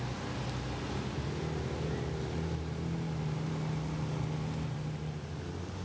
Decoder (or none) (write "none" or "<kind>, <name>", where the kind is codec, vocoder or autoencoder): none